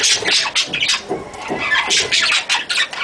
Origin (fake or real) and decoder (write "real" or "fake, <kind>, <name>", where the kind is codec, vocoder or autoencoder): real